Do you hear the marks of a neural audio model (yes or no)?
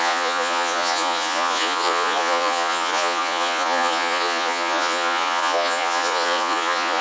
yes